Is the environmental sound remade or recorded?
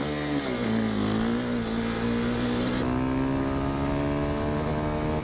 recorded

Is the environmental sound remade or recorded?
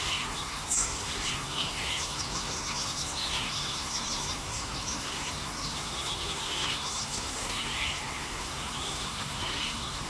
remade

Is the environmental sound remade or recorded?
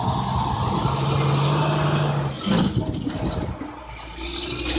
recorded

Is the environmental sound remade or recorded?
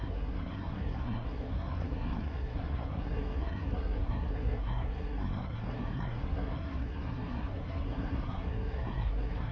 remade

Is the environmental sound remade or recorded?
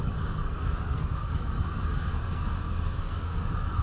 remade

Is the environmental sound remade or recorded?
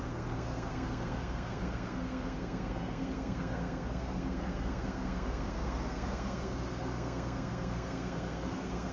remade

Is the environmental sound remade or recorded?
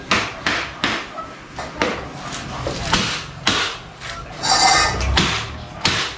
recorded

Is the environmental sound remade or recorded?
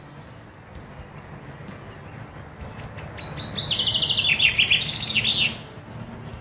recorded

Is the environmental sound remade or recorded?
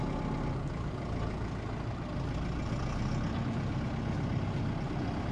recorded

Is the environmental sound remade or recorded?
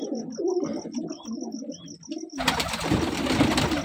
recorded